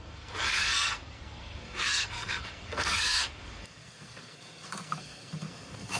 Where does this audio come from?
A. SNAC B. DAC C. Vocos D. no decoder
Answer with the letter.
A